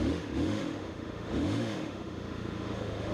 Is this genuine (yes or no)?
no